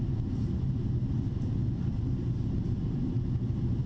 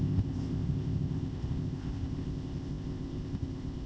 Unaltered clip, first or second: first